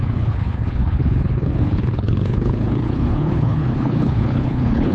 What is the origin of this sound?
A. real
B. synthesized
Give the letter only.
B